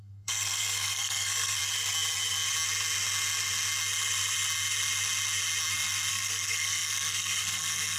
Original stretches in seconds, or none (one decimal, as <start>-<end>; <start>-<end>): 1.6-6.1